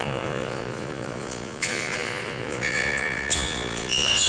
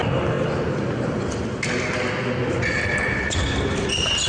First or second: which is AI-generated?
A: first